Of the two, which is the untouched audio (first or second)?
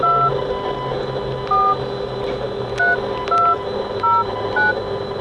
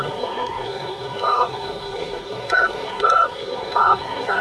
first